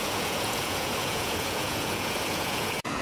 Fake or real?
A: fake